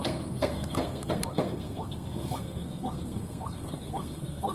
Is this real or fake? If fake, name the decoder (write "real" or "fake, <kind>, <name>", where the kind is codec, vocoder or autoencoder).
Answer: fake, codec, SNAC